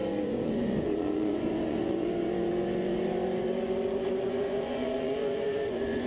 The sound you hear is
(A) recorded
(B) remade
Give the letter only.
B